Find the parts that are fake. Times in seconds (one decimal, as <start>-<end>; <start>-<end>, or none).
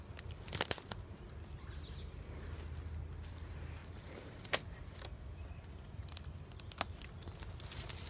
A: 3.8-4.4